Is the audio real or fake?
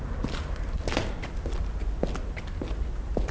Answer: real